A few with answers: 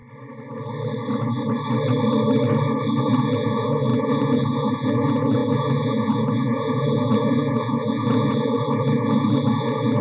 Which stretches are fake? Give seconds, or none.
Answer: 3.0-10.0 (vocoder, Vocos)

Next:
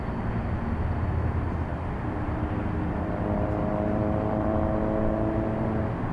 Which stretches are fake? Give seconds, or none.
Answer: 1.7-4.8 (vocoder, BigVGAN v2)

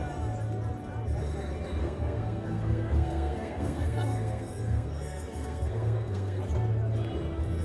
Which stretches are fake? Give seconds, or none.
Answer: 1.8-6.4 (codec, SNAC)

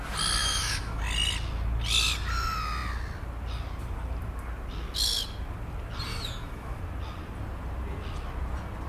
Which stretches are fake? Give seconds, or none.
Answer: 0.4-1.0 (autoencoder, DAC-VAE); 6.1-6.8

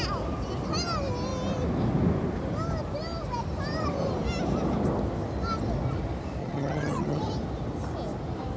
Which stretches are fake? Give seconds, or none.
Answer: 6.4-7.2 (vocoder, HiFi-GAN)

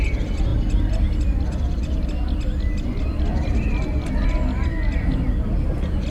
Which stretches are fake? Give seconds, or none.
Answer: none

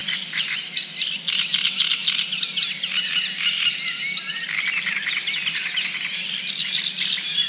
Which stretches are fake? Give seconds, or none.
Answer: 0.0-0.6 (vocoder, Vocos)

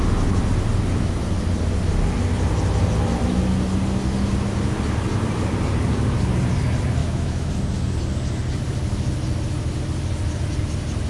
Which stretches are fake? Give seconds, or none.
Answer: 7.0-7.5 (autoencoder, DAC-VAE)